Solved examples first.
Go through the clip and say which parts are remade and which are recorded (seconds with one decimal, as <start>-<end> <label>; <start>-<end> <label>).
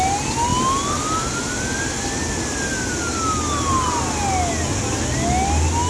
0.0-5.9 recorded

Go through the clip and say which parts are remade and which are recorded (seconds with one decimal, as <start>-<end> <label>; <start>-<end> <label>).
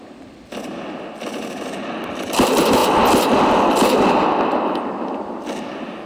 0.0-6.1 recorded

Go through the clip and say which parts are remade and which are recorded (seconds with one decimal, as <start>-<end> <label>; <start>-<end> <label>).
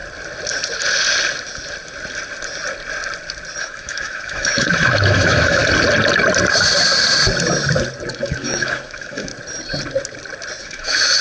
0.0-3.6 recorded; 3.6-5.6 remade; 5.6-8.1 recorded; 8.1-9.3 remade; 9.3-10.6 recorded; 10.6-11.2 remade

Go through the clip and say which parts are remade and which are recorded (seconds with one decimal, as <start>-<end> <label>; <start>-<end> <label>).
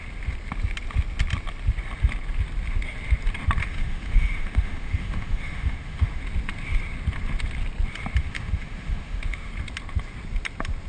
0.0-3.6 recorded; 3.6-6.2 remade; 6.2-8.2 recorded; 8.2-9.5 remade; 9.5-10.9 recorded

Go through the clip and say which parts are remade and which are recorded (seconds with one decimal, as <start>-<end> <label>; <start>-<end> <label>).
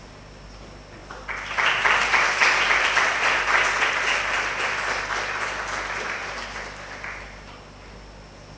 0.0-8.6 recorded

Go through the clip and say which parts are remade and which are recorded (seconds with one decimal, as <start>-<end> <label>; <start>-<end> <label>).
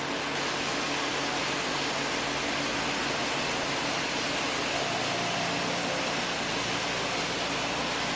0.0-8.2 recorded